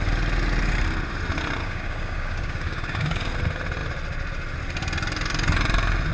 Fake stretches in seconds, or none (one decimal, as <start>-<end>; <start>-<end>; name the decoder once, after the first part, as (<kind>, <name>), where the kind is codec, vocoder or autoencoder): 1.6-3.3 (codec, DAC)